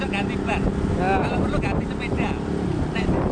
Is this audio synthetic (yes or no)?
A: no